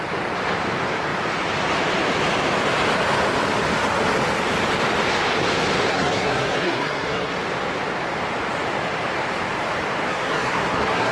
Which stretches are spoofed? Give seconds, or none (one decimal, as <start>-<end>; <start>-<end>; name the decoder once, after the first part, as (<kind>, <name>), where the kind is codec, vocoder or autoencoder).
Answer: 5.9-7.3 (codec, SNAC); 10.1-11.1